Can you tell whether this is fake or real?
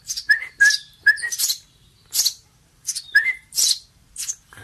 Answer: fake